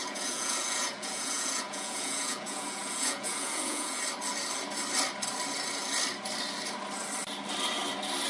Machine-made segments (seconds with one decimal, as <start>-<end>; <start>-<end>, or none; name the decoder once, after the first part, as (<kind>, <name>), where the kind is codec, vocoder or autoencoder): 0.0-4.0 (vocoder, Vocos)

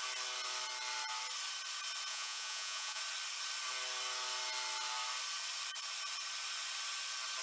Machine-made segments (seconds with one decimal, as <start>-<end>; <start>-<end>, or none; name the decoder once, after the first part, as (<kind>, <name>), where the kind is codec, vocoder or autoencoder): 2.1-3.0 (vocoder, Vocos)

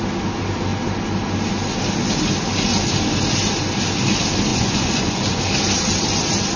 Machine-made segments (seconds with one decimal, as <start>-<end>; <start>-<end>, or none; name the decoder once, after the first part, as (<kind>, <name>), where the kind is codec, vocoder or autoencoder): 4.5-5.4 (vocoder, Vocos)